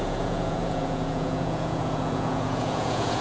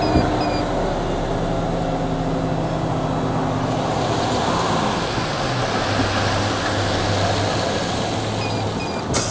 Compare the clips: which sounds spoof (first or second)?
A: first